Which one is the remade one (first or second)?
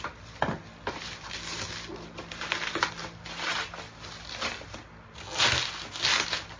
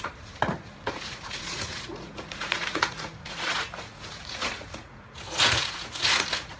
second